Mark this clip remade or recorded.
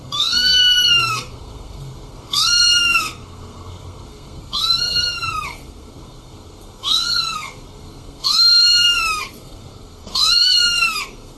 remade